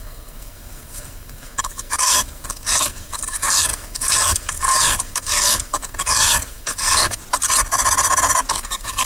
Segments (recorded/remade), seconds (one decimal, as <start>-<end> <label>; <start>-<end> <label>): 0.0-7.2 remade; 7.2-8.5 recorded; 8.5-9.1 remade